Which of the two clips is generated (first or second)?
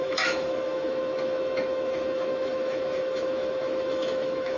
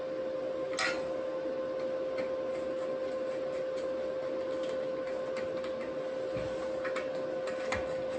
first